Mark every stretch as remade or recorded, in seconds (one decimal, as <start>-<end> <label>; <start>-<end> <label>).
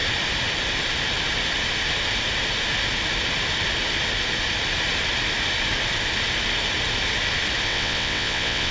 0.0-7.7 recorded; 7.7-8.7 remade